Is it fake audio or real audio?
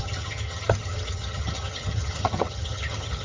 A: fake